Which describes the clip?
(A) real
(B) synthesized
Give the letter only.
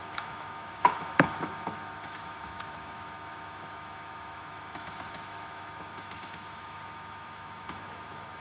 B